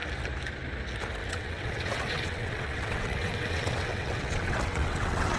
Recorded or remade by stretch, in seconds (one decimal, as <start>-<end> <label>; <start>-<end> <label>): 0.0-1.3 recorded; 1.3-5.4 remade